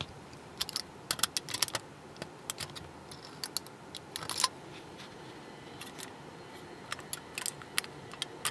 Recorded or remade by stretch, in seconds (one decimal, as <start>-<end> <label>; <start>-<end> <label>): 0.0-8.5 recorded